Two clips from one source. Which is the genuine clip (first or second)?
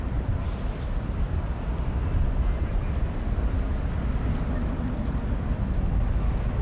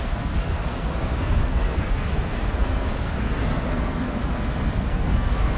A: first